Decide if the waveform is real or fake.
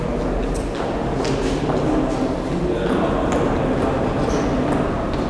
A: real